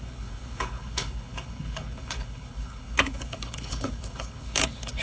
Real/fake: fake